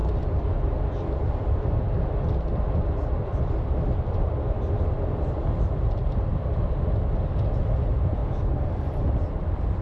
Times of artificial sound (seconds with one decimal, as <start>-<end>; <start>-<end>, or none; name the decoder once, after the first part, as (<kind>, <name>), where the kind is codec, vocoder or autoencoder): 0.0-6.3 (vocoder, BigVGAN v2); 7.6-8.2; 8.9-9.8